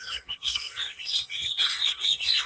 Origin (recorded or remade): remade